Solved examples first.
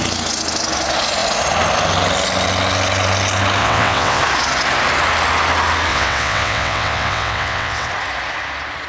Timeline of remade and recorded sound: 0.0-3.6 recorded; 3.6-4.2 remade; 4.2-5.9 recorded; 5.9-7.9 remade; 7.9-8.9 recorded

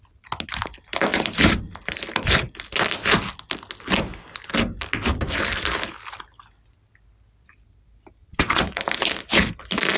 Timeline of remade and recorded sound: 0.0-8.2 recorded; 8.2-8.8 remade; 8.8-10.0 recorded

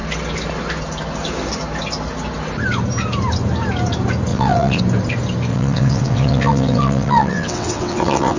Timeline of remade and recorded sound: 0.0-4.3 recorded; 4.3-4.8 remade; 4.8-5.5 recorded; 5.5-8.4 remade